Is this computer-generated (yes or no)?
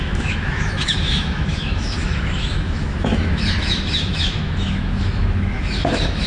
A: yes